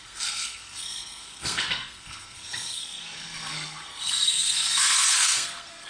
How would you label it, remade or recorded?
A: remade